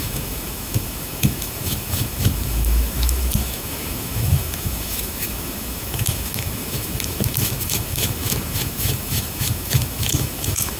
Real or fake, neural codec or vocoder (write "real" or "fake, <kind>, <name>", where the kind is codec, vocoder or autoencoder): fake, autoencoder, DAC-VAE